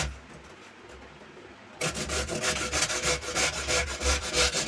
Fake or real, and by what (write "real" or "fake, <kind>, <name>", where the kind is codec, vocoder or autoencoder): real